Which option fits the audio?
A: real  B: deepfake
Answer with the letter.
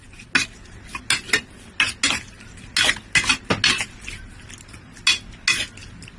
A